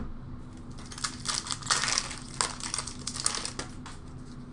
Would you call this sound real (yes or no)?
yes